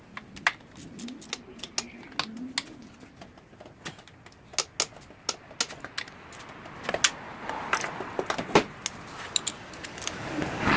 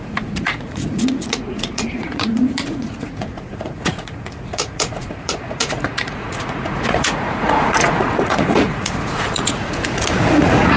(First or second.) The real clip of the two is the first